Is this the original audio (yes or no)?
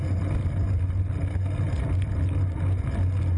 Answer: yes